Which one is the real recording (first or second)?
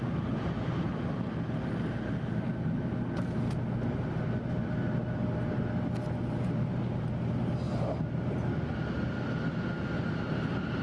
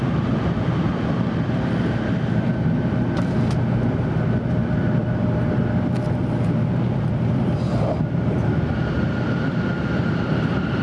first